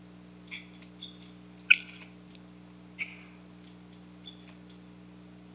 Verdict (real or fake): real